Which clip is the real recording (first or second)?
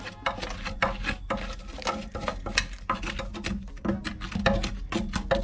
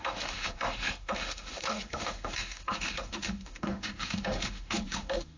first